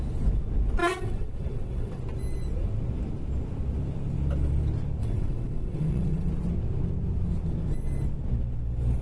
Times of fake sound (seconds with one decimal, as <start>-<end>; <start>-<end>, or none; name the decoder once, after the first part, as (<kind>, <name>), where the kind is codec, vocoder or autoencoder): 0.8-2.0 (vocoder, WaveNeXt); 5.0-6.3